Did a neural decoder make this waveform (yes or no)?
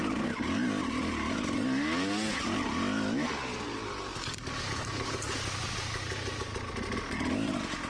no